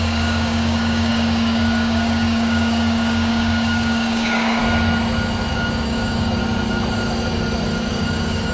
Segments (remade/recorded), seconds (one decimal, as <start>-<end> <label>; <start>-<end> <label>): 0.0-4.6 remade; 4.6-5.5 recorded; 5.5-6.4 remade; 6.4-7.9 recorded; 7.9-8.5 remade